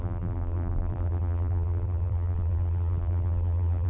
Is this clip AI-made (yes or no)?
yes